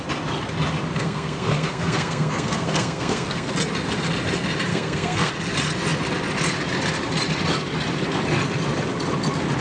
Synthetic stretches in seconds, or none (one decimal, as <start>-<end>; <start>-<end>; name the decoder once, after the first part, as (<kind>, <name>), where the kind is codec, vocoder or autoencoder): 0.9-3.5 (codec, SNAC); 4.7-5.3